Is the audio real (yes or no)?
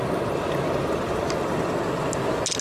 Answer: yes